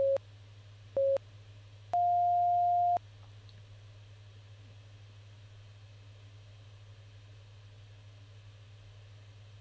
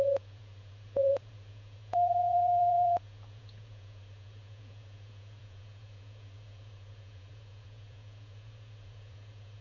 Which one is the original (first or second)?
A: first